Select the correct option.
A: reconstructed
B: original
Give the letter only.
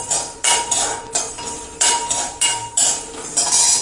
B